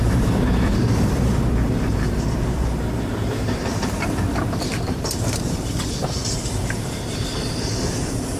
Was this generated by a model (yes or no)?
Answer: yes